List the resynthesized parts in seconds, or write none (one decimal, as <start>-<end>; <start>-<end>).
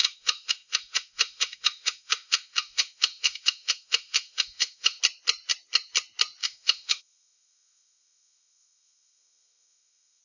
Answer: 0.0-5.0; 6.4-10.2